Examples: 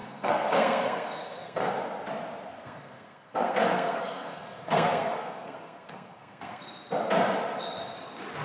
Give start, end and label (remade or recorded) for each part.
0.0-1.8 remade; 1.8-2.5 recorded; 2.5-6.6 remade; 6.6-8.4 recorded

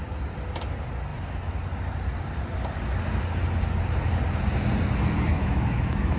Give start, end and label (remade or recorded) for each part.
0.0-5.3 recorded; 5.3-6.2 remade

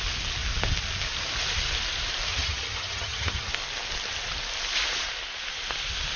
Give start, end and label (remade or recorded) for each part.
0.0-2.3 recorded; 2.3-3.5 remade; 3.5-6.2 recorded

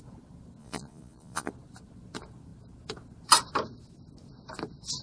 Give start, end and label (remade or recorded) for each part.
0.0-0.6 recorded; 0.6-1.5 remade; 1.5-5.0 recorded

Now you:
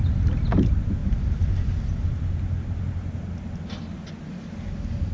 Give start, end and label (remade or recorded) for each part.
0.0-5.1 recorded

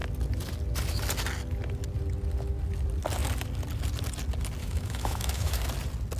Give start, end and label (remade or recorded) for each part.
0.0-4.6 recorded; 4.6-5.6 remade; 5.6-6.2 recorded

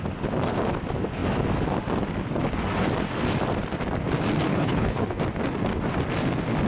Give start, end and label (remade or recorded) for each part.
0.0-4.5 recorded; 4.5-5.2 remade; 5.2-6.7 recorded

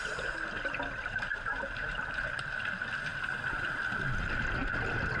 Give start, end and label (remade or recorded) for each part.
0.0-1.3 recorded; 1.3-2.4 remade; 2.4-5.2 recorded